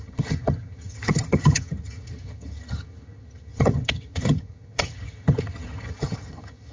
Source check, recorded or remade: remade